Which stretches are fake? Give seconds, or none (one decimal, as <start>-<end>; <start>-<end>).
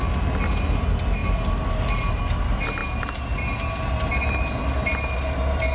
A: 1.2-2.2